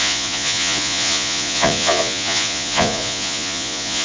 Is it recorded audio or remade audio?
remade